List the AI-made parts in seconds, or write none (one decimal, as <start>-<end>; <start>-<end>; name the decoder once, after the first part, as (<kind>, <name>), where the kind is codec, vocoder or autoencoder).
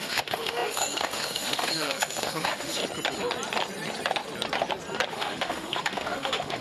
0.0-2.8 (autoencoder, DAC-VAE); 5.1-6.6